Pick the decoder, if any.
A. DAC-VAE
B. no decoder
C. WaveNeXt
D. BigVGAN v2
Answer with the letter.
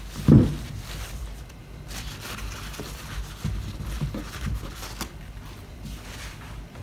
B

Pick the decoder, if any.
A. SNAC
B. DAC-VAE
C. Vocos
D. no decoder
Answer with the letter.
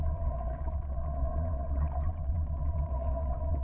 C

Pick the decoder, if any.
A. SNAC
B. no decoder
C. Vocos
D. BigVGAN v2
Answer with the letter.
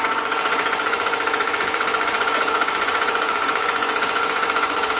C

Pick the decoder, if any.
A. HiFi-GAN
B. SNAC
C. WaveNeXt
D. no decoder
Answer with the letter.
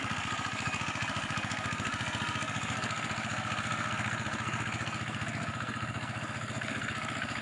B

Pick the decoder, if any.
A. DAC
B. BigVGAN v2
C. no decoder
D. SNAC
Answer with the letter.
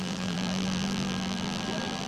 B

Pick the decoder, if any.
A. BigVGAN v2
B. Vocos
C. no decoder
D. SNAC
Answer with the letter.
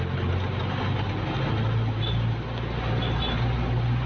C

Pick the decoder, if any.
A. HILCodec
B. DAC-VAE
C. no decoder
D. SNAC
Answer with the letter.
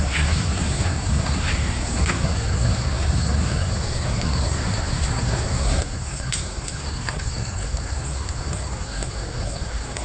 D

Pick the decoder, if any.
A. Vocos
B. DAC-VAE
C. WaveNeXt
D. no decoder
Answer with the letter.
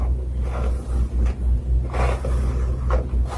D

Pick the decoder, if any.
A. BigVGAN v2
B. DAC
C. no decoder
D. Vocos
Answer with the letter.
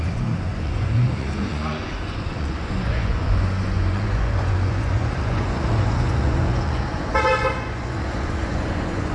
D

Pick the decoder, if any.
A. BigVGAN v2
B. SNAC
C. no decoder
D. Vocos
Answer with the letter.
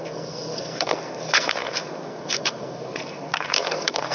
B